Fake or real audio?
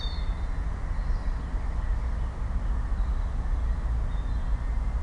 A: real